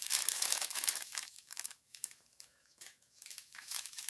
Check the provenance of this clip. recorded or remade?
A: remade